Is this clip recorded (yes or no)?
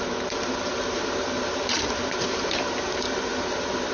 no